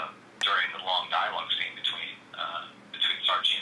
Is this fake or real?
real